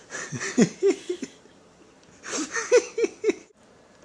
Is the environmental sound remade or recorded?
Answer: recorded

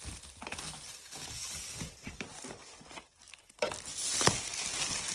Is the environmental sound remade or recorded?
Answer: recorded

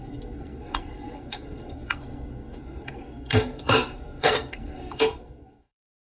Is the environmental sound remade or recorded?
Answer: remade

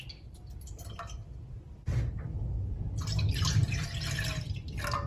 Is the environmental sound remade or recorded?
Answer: recorded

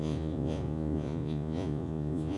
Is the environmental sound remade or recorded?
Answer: remade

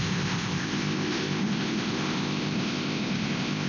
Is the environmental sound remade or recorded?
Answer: remade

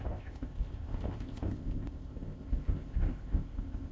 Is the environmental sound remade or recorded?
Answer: remade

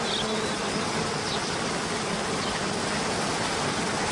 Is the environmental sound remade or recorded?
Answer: recorded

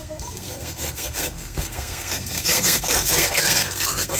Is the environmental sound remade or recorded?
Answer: remade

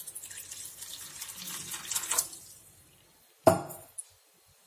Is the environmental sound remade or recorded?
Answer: recorded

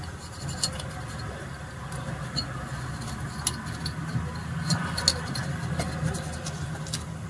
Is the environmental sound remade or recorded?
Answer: recorded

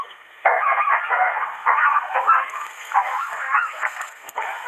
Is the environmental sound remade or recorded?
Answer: remade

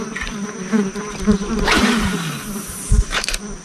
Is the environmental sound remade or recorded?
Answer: remade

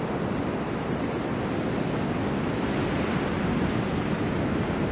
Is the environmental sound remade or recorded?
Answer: remade